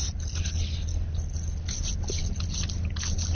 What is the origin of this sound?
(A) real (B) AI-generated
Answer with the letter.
A